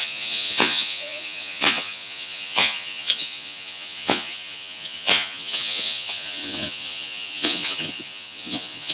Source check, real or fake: fake